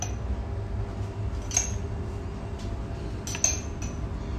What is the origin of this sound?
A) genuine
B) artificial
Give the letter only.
A